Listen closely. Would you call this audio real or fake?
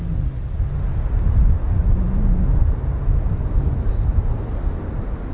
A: real